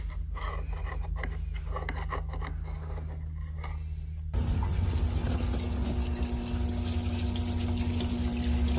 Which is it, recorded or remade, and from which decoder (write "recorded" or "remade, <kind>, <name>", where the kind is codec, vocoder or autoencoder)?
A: recorded